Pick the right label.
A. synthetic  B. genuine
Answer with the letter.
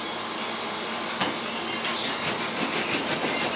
B